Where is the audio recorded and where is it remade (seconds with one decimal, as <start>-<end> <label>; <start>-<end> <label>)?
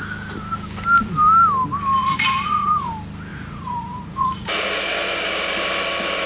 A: 0.0-2.0 recorded; 2.0-2.9 remade; 2.9-3.3 recorded; 3.3-4.7 remade; 4.7-6.3 recorded